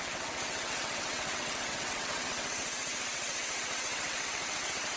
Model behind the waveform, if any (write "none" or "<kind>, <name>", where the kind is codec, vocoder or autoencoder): vocoder, WaveNeXt